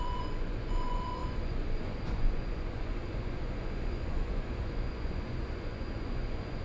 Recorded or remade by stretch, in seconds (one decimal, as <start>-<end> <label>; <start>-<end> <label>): 0.0-6.6 remade